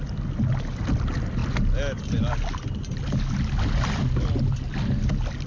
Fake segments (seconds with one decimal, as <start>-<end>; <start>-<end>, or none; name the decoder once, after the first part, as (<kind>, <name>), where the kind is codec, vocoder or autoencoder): none